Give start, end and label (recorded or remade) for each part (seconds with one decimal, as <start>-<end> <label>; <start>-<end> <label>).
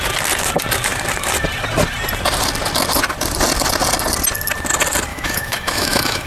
0.0-5.1 recorded; 5.1-6.3 remade